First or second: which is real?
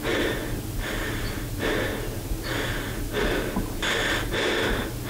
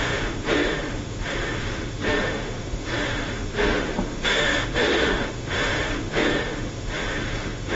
first